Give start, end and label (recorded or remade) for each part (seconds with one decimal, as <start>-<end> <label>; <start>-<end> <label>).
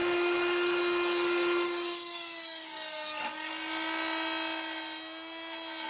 0.0-3.5 remade; 3.5-5.9 recorded